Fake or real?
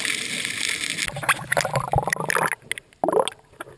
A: real